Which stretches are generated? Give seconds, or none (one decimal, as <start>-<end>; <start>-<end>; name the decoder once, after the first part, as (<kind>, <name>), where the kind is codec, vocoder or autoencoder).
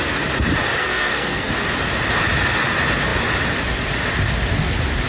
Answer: 0.8-1.5 (codec, SNAC)